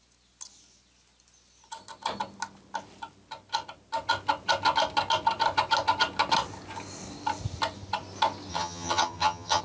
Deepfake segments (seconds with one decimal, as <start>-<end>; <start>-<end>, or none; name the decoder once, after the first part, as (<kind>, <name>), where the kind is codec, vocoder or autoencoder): 8.5-9.6 (vocoder, HiFi-GAN)